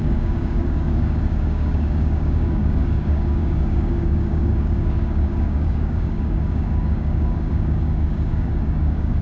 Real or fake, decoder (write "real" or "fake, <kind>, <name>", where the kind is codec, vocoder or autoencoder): fake, codec, DAC